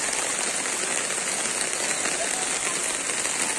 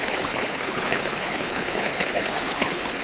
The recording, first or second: first